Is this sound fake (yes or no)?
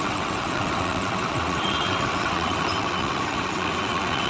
yes